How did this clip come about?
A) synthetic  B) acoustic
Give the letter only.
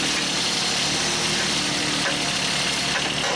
B